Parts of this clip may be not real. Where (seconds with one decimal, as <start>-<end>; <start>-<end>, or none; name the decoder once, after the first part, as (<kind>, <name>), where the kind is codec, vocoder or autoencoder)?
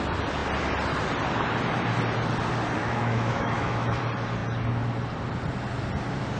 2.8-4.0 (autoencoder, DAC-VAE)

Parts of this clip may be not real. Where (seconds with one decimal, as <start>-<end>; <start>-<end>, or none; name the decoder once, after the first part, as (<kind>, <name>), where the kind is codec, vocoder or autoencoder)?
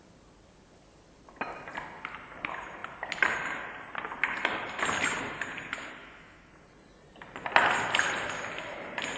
6.0-6.5 (autoencoder, DAC-VAE)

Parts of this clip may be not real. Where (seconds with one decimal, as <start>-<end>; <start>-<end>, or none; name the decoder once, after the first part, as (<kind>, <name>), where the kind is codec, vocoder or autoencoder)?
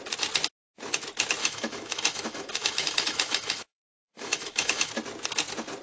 1.4-4.9 (autoencoder, DAC-VAE)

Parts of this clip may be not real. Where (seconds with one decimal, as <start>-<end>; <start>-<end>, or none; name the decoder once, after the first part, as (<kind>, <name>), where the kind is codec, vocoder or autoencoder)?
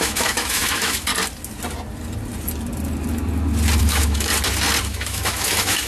0.0-1.1 (autoencoder, DAC-VAE); 3.8-4.3; 4.8-5.9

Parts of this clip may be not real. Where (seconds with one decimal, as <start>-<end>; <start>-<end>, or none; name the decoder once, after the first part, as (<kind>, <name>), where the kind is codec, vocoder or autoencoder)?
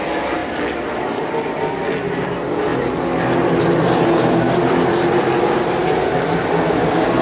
none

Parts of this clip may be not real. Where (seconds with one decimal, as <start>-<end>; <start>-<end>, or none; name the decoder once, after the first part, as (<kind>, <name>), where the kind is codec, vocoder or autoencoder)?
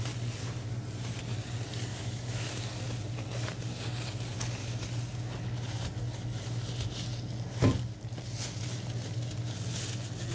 1.9-2.5 (autoencoder, DAC-VAE)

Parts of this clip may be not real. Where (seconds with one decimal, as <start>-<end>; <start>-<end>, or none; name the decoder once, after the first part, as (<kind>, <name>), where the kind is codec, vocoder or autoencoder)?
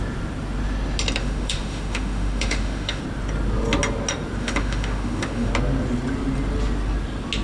1.2-3.0 (autoencoder, DAC-VAE); 4.4-5.5